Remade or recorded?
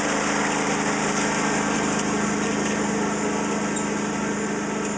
recorded